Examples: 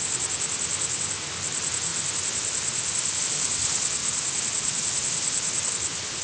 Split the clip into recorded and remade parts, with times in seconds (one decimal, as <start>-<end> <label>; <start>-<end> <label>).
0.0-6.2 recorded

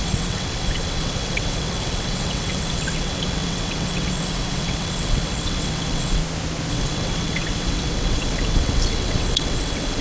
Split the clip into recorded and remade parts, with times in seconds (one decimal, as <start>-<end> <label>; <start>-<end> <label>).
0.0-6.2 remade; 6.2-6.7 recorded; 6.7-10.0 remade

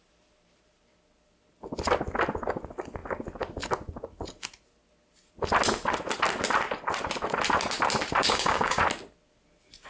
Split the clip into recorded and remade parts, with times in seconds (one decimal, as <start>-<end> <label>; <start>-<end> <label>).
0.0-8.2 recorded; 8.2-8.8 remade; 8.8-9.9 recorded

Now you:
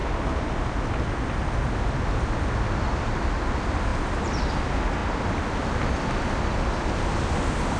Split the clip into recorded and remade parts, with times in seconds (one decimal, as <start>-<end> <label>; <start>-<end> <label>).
0.0-7.8 recorded

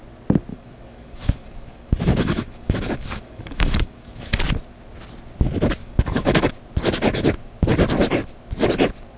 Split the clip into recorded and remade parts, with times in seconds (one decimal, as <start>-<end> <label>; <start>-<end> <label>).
0.0-0.5 recorded; 0.5-4.4 remade; 4.4-5.8 recorded; 5.8-6.5 remade; 6.5-9.2 recorded